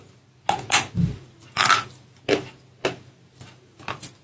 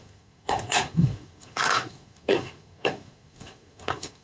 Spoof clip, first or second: second